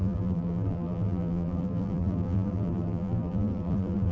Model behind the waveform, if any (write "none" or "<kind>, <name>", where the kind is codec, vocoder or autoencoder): vocoder, BigVGAN v2